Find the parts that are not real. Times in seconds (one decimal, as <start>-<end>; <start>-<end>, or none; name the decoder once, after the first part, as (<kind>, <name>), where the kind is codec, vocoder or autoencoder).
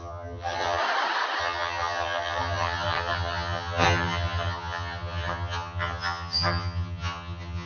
0.0-0.8 (vocoder, HiFi-GAN); 1.4-7.7